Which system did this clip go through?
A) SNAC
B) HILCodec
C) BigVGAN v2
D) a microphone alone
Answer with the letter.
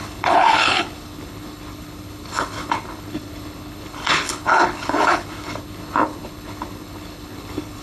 B